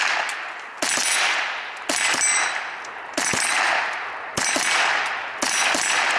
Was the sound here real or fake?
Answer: real